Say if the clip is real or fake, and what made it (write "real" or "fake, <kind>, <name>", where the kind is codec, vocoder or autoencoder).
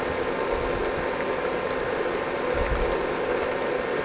real